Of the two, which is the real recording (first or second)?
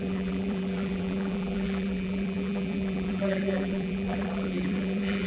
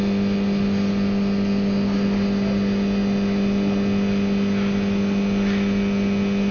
second